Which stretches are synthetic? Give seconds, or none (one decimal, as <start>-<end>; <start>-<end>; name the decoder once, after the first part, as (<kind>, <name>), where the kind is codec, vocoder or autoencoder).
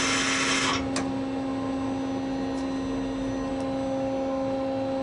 none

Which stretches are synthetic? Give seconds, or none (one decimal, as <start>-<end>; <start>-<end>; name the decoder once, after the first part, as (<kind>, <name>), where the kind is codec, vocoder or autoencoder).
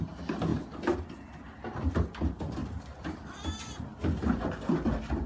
0.5-1.0 (vocoder, BigVGAN v2); 2.6-4.6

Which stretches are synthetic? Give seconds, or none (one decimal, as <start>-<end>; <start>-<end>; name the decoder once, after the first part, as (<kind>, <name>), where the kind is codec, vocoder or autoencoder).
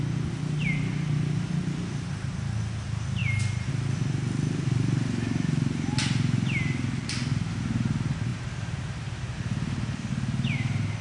3.2-3.7 (vocoder, BigVGAN v2)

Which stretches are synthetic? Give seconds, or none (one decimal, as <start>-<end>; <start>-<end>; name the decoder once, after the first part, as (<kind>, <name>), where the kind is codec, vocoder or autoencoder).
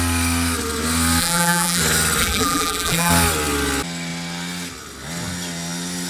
1.2-1.8 (vocoder, BigVGAN v2); 2.2-3.1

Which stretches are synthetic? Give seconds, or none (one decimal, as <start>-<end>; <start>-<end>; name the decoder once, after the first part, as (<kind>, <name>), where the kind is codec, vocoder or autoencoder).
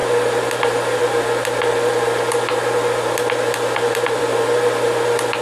none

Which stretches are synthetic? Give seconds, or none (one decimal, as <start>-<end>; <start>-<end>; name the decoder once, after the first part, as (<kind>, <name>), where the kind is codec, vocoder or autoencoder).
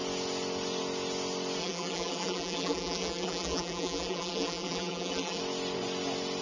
1.6-5.4 (vocoder, BigVGAN v2)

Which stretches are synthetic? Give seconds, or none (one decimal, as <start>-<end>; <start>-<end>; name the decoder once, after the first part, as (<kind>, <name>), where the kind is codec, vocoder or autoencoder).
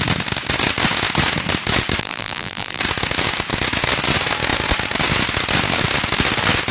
2.0-2.8 (vocoder, BigVGAN v2)